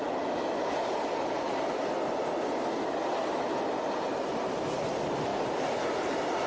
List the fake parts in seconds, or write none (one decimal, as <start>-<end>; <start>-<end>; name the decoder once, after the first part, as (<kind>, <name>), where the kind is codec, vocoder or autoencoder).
none